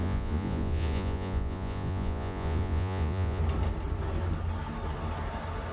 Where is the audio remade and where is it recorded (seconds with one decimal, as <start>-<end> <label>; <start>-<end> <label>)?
0.0-3.4 remade; 3.4-5.7 recorded